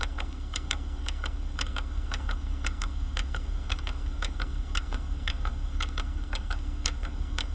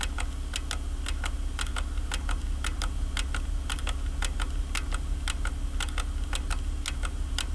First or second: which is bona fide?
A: second